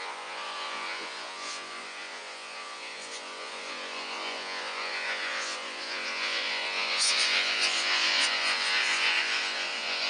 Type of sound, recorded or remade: remade